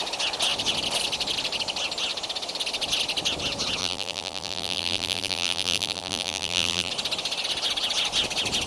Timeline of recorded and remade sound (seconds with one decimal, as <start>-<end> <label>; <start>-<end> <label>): 0.0-3.8 recorded; 3.8-6.9 remade; 6.9-8.7 recorded